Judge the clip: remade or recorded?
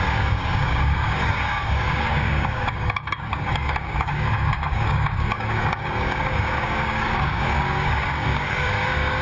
remade